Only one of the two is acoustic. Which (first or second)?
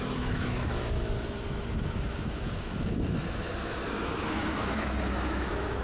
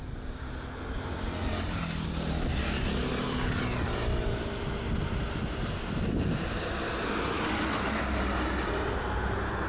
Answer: second